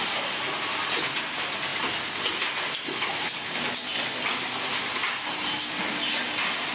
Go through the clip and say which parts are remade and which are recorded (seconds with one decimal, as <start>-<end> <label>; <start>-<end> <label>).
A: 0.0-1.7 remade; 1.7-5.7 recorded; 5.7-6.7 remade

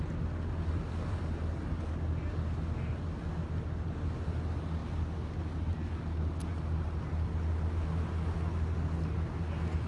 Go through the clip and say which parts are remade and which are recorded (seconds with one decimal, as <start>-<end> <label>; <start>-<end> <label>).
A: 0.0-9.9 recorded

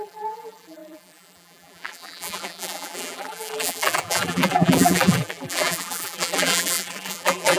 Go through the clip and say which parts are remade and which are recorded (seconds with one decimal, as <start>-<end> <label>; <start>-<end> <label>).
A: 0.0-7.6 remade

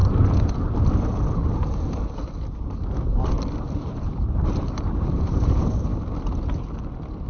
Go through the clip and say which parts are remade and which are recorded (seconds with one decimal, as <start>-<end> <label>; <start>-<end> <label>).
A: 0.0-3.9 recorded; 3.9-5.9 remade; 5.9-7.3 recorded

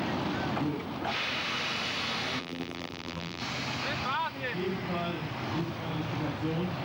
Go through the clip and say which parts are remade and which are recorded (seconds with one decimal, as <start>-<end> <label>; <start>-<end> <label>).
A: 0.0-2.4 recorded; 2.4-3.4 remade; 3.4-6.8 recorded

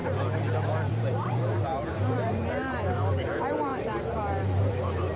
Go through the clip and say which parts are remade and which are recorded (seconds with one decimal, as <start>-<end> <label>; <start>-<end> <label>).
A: 0.0-0.9 recorded; 0.9-5.2 remade

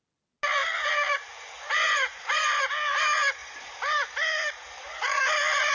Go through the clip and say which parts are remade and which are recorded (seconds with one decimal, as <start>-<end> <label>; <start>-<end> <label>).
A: 0.0-0.6 recorded; 0.6-3.0 remade; 3.0-3.4 recorded; 3.4-5.7 remade